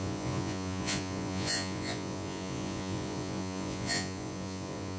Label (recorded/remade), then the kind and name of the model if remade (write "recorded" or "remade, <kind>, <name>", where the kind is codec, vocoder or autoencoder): remade, vocoder, Vocos